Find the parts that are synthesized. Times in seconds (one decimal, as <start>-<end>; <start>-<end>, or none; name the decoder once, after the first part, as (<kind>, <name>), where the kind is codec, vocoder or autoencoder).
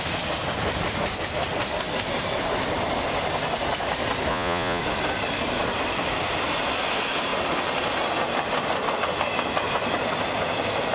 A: 4.3-4.8 (vocoder, Vocos)